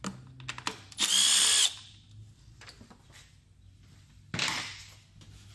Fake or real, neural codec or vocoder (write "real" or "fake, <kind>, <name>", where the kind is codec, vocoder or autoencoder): real